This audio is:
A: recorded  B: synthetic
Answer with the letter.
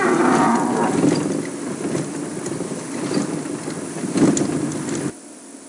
A